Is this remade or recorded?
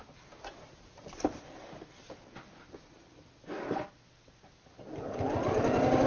recorded